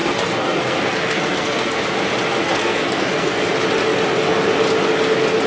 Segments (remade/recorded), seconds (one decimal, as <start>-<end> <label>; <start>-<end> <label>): 0.0-1.8 remade; 1.8-2.4 recorded; 2.4-3.3 remade; 3.3-5.5 recorded